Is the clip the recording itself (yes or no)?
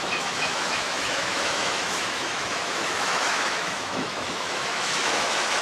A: no